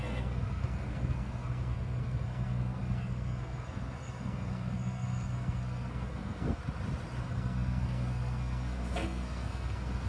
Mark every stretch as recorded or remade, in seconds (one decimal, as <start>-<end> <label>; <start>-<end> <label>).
0.0-6.6 remade; 6.6-7.2 recorded; 7.2-10.1 remade